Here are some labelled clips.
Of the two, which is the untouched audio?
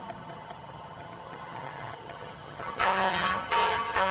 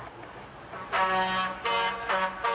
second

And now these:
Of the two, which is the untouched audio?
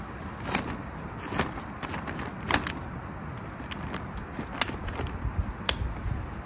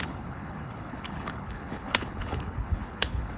first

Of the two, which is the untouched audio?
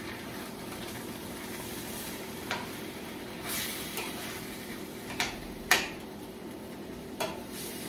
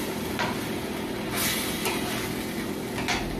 second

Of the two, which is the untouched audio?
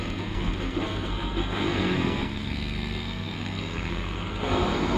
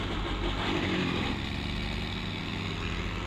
second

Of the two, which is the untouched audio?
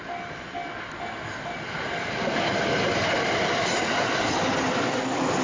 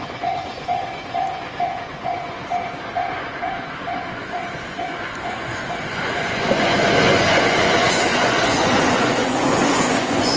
first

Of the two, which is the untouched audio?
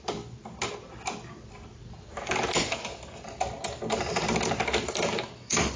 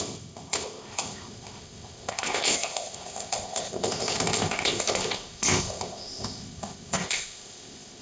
first